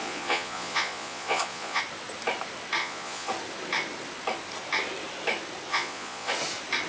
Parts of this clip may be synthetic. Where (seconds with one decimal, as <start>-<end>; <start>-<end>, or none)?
0.0-1.8; 2.8-3.3; 5.7-6.3